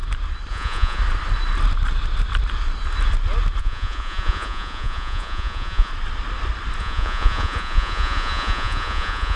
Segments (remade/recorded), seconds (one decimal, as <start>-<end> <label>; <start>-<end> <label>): 0.0-0.5 recorded; 0.5-1.0 remade; 1.0-3.6 recorded; 3.6-5.9 remade; 5.9-6.8 recorded; 6.8-9.4 remade

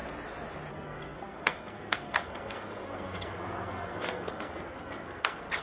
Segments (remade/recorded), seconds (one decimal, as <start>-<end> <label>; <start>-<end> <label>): 0.0-0.7 recorded; 0.7-5.6 remade